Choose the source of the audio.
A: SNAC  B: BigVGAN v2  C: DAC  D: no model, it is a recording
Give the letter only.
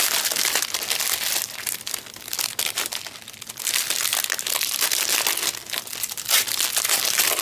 D